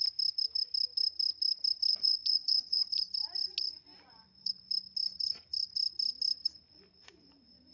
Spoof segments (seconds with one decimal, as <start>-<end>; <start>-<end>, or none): 1.9-2.8